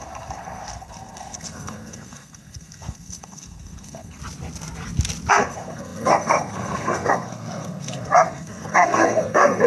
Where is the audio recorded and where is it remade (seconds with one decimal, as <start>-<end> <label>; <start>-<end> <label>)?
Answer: 0.0-4.2 remade; 4.2-5.3 recorded; 5.3-9.7 remade